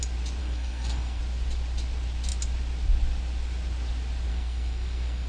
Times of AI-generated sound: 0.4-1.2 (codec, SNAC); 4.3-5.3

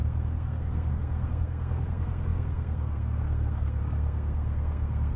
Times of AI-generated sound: 0.0-5.2 (codec, SNAC)

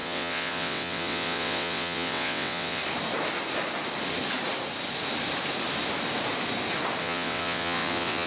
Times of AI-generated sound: 0.0-2.8 (vocoder, WaveNeXt); 7.0-8.3